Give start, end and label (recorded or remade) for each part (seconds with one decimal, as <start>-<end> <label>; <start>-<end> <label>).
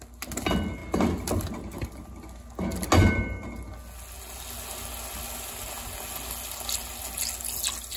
0.0-8.0 recorded